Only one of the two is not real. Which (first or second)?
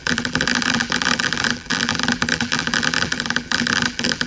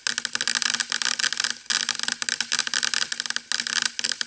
first